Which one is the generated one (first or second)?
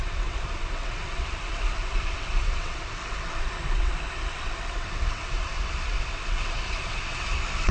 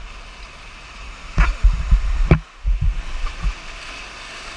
first